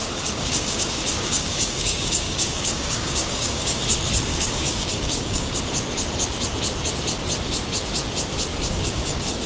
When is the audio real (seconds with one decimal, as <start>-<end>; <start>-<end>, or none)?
3.8-4.3; 5.6-8.5